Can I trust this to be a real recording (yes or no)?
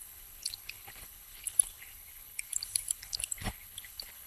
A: no